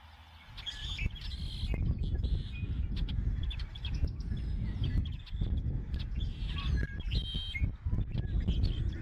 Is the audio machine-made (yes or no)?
no